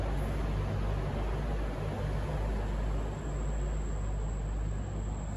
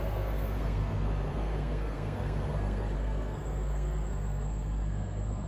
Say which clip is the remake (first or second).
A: second